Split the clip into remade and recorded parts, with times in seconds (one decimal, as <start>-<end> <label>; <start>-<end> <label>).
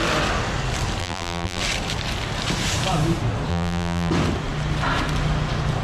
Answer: 0.0-1.0 recorded; 1.0-1.6 remade; 1.6-3.5 recorded; 3.5-4.1 remade; 4.1-5.8 recorded